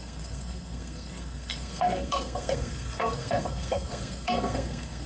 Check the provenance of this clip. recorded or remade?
remade